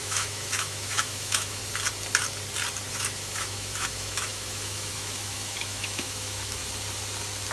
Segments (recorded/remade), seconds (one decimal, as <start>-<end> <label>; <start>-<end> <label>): 0.0-1.6 remade; 1.6-2.9 recorded; 2.9-6.6 remade; 6.6-7.5 recorded